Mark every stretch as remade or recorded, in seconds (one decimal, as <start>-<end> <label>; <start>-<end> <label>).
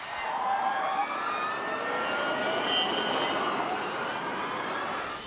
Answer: 0.0-5.3 recorded